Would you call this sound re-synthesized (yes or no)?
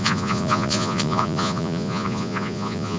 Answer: yes